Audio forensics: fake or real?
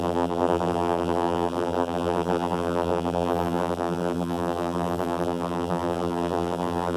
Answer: fake